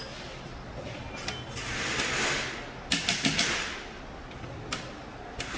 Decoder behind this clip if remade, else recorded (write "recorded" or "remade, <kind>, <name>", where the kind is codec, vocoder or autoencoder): recorded